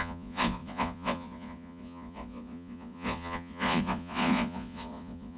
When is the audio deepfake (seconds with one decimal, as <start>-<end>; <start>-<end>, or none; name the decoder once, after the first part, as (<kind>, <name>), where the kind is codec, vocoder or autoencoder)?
0.0-5.4 (vocoder, Vocos)